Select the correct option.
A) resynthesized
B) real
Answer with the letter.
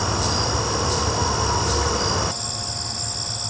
B